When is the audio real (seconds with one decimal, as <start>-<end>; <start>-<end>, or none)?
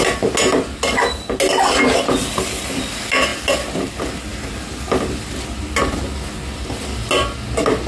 0.0-7.9